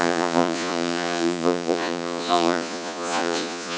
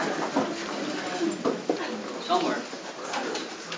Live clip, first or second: second